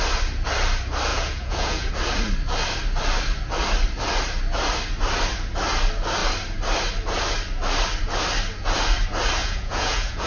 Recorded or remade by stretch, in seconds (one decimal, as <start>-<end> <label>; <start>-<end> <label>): 0.0-1.1 recorded; 1.1-1.9 remade; 1.9-9.4 recorded; 9.4-10.3 remade

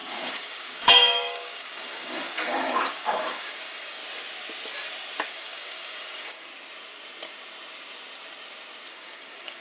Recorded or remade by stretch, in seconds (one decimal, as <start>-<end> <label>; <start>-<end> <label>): 0.0-4.0 remade; 4.0-5.3 recorded; 5.3-6.5 remade; 6.5-8.9 recorded; 8.9-9.6 remade

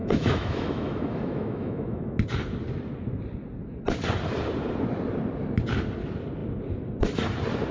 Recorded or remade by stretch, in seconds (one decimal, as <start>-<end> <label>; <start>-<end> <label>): 0.0-2.2 remade; 2.2-7.7 recorded

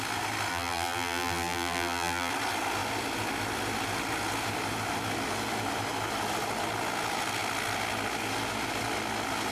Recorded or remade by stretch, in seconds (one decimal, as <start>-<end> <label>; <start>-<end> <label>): 0.0-0.5 recorded; 0.5-2.3 remade; 2.3-9.5 recorded

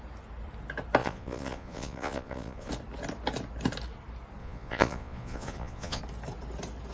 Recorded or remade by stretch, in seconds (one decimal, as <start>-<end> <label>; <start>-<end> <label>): 0.0-1.0 recorded; 1.0-2.7 remade; 2.7-4.4 recorded; 4.4-6.0 remade; 6.0-6.9 recorded

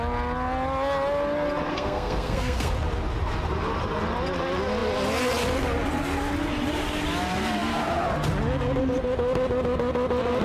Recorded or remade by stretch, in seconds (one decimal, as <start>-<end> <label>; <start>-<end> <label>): 0.0-1.7 recorded; 1.7-2.7 remade; 2.7-10.4 recorded